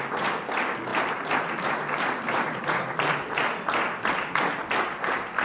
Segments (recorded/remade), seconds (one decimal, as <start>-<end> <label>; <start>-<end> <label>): 0.0-5.4 recorded